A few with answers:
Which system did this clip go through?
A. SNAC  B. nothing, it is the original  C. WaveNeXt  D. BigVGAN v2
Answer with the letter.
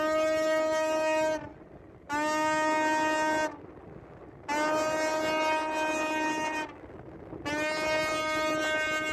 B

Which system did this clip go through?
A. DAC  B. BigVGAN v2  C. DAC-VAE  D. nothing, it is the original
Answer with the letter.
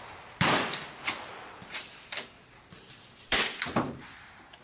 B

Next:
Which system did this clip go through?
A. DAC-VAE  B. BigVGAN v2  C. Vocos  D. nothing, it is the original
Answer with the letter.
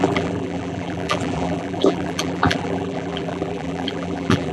B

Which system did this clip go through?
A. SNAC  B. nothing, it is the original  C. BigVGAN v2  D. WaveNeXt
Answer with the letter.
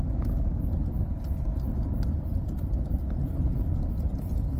B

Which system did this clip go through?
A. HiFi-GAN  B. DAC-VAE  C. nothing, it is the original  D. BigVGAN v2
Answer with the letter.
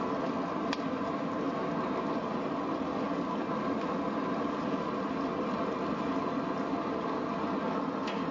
C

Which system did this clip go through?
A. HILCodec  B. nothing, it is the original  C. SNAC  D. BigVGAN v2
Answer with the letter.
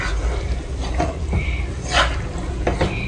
B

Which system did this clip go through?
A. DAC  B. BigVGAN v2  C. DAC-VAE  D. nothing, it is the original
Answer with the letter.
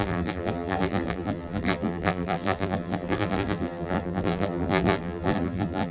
B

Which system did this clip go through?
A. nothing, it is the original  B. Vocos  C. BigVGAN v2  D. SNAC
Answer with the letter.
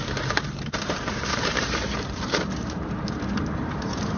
C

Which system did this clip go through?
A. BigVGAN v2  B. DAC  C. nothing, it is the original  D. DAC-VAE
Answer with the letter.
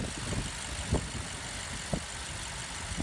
C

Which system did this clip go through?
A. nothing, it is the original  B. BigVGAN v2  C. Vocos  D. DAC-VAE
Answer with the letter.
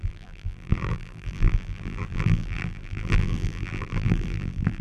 B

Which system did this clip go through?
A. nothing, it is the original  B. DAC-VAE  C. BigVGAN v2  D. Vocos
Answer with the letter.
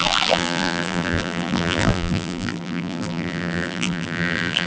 C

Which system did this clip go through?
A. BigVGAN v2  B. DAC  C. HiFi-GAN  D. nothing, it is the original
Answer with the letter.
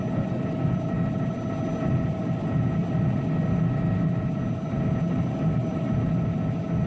D